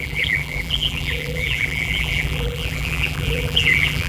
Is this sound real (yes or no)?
no